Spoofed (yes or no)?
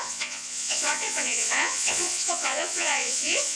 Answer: yes